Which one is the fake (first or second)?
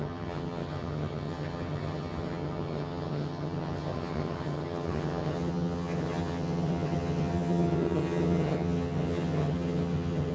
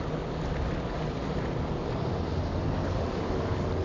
first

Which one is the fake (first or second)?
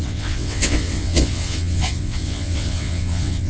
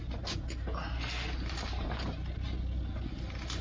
first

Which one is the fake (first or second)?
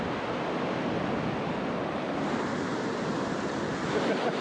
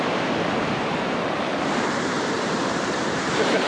second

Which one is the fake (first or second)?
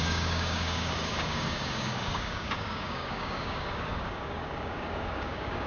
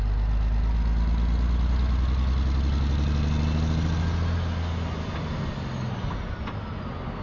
first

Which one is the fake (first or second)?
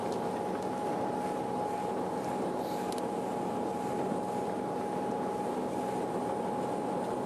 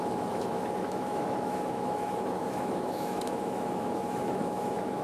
second